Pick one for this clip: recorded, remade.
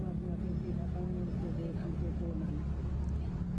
recorded